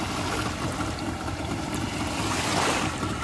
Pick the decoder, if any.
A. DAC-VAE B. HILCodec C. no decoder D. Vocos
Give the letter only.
C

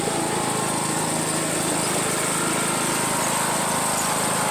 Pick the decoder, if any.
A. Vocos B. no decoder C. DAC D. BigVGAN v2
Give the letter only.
B